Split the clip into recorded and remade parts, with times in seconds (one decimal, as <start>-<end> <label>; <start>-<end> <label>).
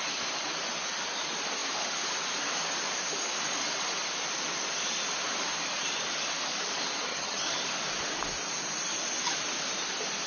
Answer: 0.0-7.1 recorded; 7.1-7.6 remade; 7.6-10.3 recorded